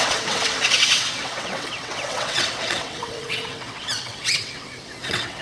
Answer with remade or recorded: remade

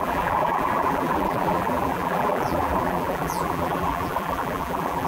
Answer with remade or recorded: remade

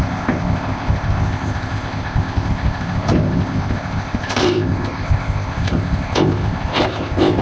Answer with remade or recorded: remade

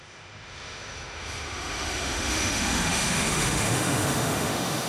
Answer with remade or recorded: remade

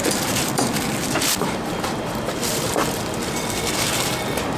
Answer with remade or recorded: remade